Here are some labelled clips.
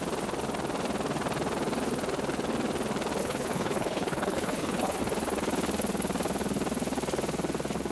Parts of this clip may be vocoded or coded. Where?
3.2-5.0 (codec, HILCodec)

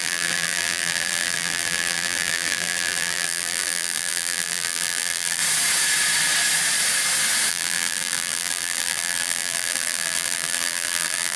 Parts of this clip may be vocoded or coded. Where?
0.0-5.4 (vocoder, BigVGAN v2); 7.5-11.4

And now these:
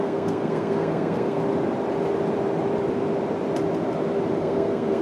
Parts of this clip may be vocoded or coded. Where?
0.0-1.4 (codec, SNAC); 4.4-5.0

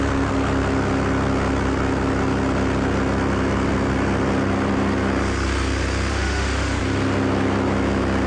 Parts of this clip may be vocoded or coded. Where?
6.1-6.8 (autoencoder, DAC-VAE)

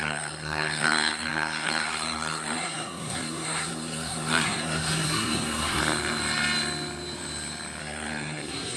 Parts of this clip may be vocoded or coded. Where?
0.0-5.8 (codec, SNAC); 7.8-8.8